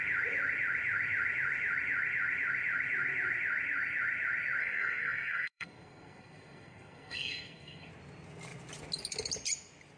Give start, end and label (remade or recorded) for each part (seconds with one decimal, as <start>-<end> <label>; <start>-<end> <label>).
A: 0.0-4.6 recorded; 4.6-7.9 remade; 7.9-10.0 recorded